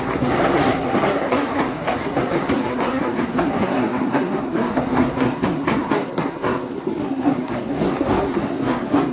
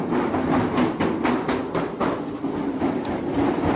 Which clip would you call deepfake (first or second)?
first